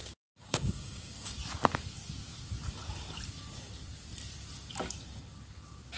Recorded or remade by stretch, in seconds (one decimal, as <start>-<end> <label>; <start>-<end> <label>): 0.0-1.4 remade; 1.4-6.0 recorded